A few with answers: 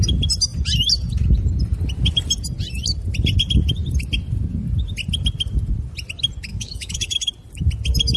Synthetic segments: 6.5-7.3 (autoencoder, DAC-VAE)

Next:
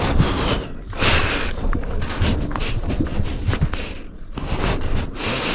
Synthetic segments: none

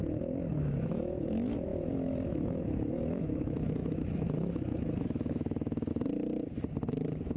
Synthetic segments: 0.0-5.9 (autoencoder, DAC-VAE)

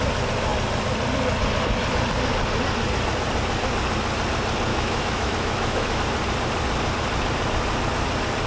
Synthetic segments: 4.7-6.0 (autoencoder, DAC-VAE)

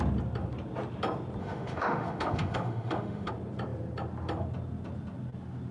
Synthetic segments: 1.4-3.3 (autoencoder, DAC-VAE)

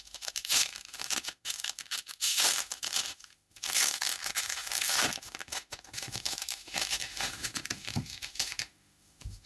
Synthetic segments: 0.0-9.5 (autoencoder, DAC-VAE)